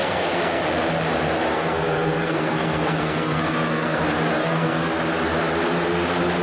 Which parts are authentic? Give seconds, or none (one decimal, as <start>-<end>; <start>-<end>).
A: 0.6-1.5; 4.0-4.4; 4.9-6.4